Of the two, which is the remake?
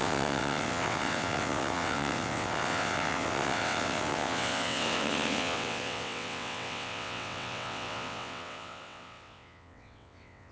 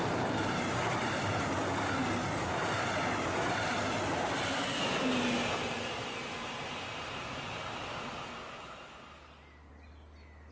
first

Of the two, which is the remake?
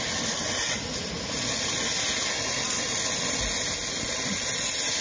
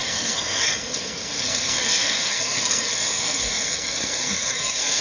second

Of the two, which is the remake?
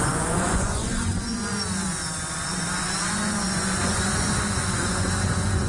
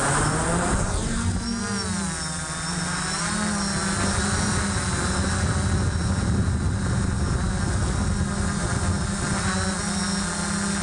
first